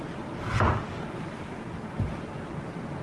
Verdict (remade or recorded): recorded